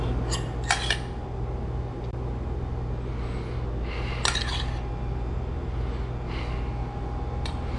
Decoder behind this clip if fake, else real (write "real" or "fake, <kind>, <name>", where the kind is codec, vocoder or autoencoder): real